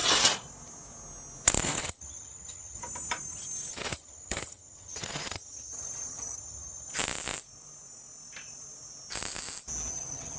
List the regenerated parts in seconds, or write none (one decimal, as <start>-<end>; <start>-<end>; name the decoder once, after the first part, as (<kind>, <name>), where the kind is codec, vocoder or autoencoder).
1.6-2.8 (vocoder, HiFi-GAN); 3.7-6.9; 9.9-10.4